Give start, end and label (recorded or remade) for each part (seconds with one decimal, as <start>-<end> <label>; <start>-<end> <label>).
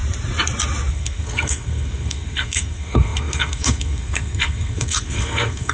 0.0-0.9 recorded; 0.9-5.7 remade